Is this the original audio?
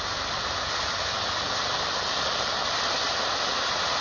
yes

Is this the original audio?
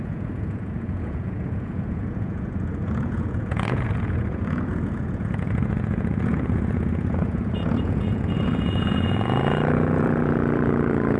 no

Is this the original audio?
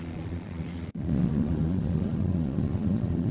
no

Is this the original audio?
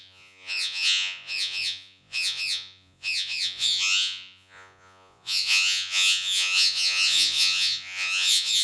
no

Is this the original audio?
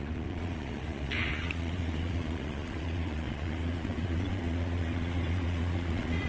no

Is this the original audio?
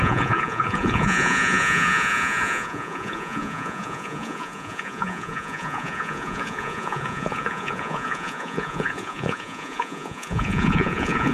no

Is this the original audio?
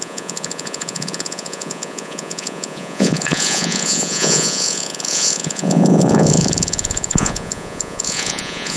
no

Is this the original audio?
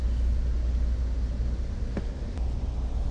yes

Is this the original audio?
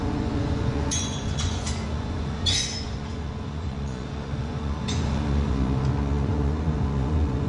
no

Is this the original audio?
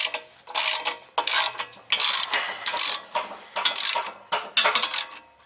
yes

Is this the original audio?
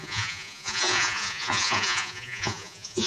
no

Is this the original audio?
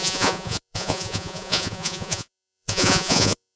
no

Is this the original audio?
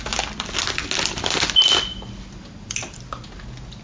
yes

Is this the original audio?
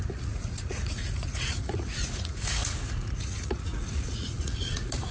no